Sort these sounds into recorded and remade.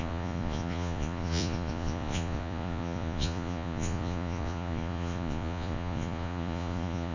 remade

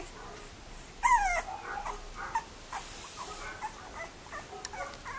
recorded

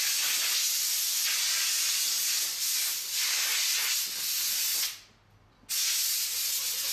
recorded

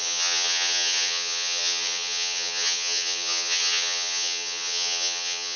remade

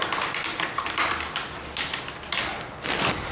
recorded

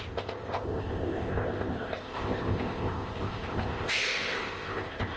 remade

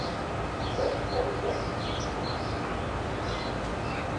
recorded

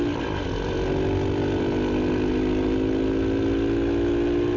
remade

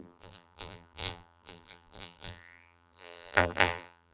remade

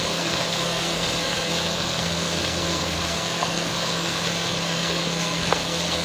remade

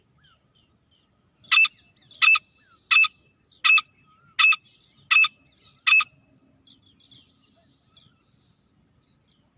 recorded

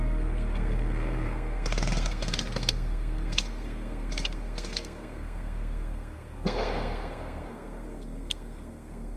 remade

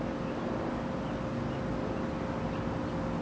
recorded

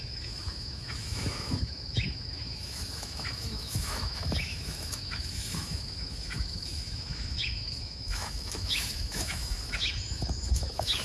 remade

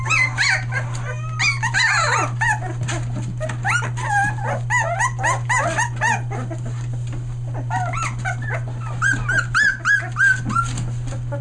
recorded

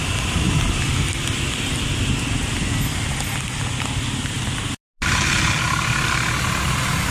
recorded